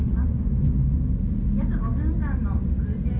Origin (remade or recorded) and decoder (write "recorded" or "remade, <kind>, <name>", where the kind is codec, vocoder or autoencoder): recorded